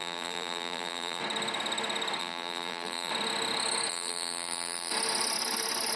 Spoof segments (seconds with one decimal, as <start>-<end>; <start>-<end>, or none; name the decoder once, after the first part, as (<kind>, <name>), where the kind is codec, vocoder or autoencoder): 0.0-1.2 (vocoder, BigVGAN v2); 2.2-3.1; 3.9-4.9